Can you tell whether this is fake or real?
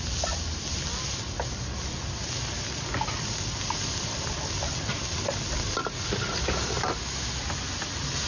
real